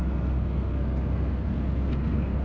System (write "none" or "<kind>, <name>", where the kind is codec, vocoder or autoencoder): codec, SNAC